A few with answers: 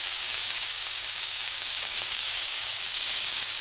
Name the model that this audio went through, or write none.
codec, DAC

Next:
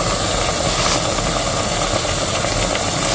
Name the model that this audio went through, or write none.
none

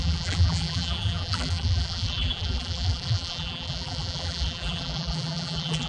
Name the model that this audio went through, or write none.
vocoder, BigVGAN v2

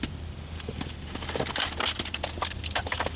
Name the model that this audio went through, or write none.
none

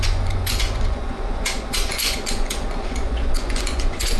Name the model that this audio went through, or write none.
vocoder, Vocos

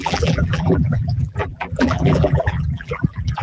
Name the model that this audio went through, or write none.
vocoder, BigVGAN v2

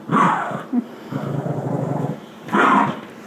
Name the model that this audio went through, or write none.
none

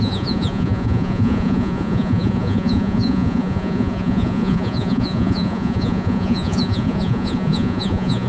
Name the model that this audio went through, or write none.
vocoder, Vocos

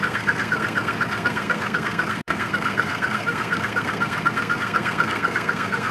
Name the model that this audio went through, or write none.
codec, SNAC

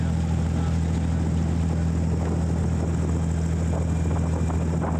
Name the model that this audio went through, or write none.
none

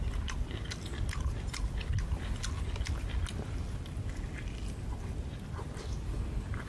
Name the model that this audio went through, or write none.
none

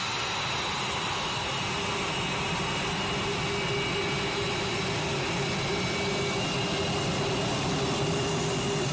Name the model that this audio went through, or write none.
none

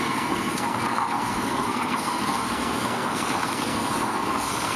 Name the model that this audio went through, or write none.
codec, SNAC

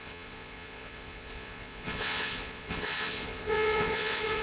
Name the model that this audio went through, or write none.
vocoder, Vocos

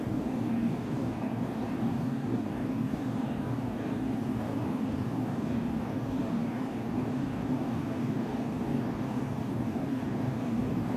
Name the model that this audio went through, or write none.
codec, DAC